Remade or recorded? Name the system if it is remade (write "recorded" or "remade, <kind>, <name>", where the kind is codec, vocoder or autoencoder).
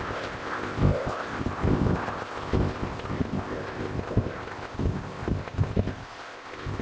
remade, codec, ZipCodec